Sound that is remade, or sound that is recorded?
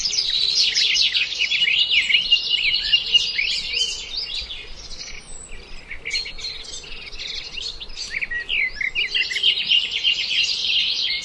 recorded